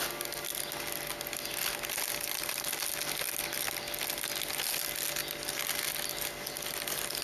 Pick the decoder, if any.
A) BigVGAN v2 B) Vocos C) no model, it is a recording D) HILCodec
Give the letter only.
C